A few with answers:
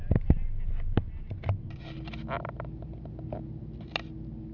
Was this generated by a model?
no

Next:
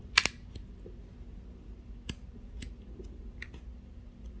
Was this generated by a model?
no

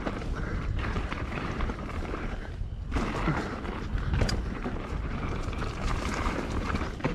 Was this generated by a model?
yes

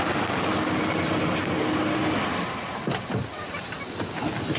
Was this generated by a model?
no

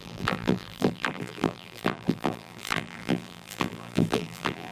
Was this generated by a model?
yes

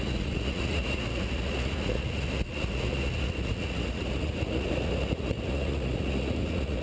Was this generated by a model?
yes